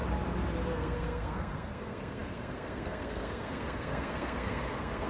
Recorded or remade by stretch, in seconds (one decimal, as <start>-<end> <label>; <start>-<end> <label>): 0.0-0.7 recorded; 0.7-5.1 remade